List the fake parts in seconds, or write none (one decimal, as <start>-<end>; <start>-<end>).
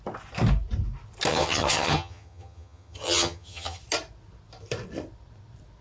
1.3-3.8